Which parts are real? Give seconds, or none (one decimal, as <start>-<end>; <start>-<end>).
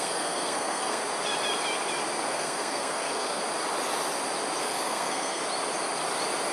1.0-2.3; 3.4-4.6; 5.4-6.5